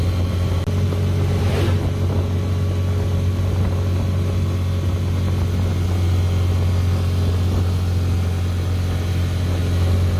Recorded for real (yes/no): yes